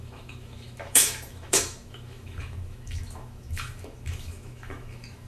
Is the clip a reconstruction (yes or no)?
yes